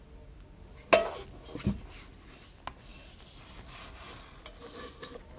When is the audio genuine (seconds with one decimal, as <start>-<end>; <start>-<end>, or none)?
0.0-2.9; 3.8-5.4